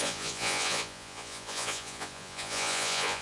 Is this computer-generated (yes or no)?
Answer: yes